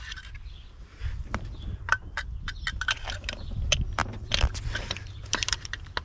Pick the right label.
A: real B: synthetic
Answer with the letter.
B